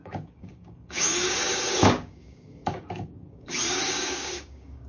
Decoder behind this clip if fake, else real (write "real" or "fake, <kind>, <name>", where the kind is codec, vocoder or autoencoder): fake, codec, DAC